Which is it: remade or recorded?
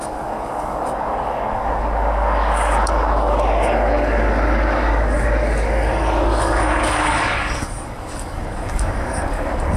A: remade